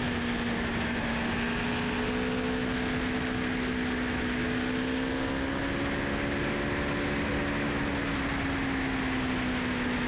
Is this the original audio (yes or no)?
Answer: yes